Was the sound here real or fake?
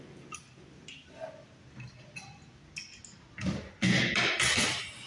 real